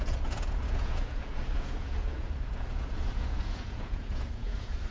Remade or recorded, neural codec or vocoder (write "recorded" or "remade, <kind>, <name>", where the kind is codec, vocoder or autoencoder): remade, vocoder, Vocos